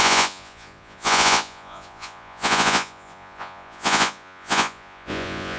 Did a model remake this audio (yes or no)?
yes